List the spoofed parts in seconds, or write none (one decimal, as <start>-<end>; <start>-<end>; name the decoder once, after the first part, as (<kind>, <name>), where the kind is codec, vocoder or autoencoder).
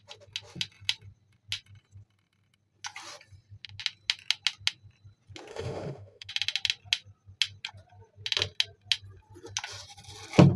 5.5-6.3 (autoencoder, DAC-VAE)